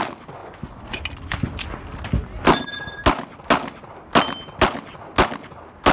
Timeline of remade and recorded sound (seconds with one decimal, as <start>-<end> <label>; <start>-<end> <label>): 0.0-0.4 recorded; 0.4-1.0 remade; 1.0-5.9 recorded